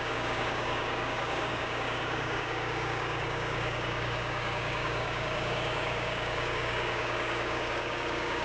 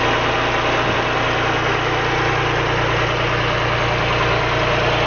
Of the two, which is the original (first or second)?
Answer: second